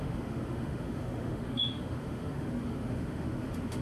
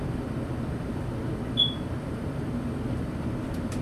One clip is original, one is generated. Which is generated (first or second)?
first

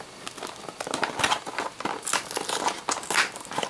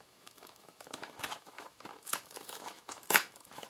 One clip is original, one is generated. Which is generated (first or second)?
second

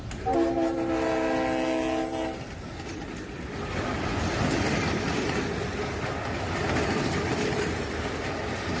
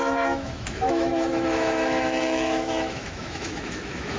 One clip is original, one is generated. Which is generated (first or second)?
second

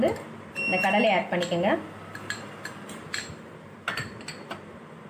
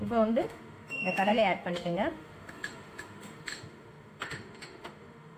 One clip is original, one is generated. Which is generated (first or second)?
second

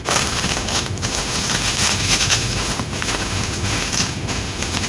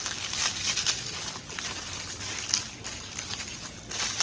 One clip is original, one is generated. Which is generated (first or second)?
first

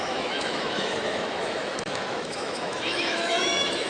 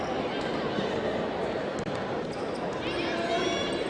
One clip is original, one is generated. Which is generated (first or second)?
first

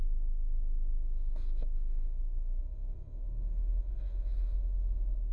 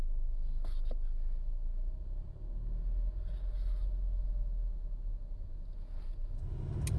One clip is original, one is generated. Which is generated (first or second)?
first